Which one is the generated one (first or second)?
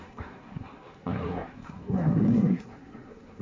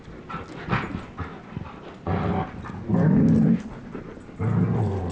first